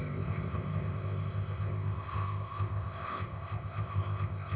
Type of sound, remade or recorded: remade